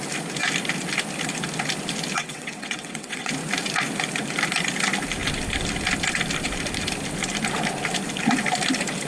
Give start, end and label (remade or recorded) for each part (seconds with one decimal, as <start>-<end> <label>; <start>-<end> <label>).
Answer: 0.0-2.2 recorded; 2.2-3.3 remade; 3.3-9.1 recorded